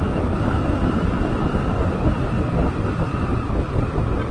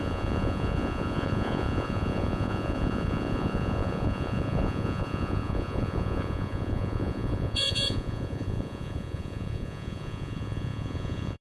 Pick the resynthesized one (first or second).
second